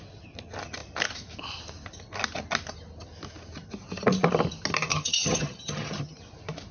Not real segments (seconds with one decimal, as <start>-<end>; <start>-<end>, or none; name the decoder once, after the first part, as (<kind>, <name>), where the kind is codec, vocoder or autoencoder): 4.9-6.2 (vocoder, HiFi-GAN)